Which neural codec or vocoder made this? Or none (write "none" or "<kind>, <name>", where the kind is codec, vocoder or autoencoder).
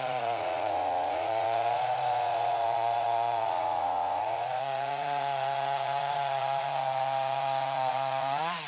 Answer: vocoder, Vocos